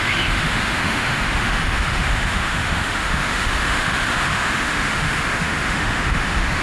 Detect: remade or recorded remade